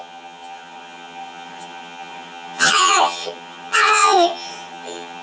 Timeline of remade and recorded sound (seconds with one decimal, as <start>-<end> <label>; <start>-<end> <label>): 0.0-5.2 remade